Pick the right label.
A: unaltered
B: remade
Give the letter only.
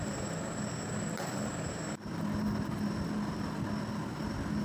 B